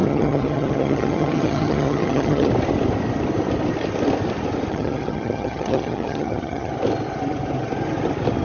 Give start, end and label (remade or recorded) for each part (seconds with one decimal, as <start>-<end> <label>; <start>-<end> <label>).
0.0-2.5 remade; 2.5-4.7 recorded; 4.7-6.7 remade; 6.7-8.4 recorded

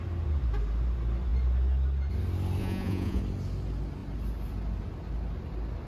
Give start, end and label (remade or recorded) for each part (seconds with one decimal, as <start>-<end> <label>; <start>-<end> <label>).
0.0-2.6 recorded; 2.6-3.2 remade; 3.2-5.9 recorded